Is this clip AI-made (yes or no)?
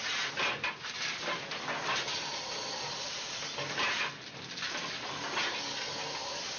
no